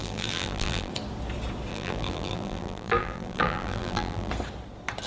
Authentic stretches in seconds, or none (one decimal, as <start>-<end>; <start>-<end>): 0.9-1.7; 4.3-5.1